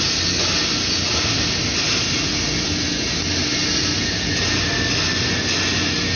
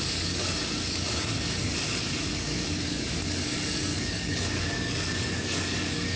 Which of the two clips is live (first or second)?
first